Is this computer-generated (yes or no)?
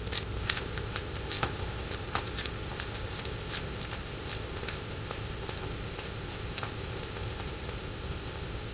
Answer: yes